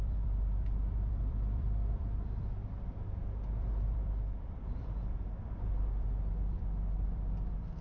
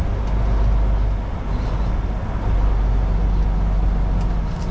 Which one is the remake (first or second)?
first